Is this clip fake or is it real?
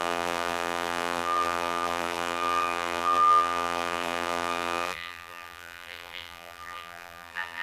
fake